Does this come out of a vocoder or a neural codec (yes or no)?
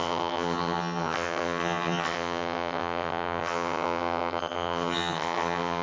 yes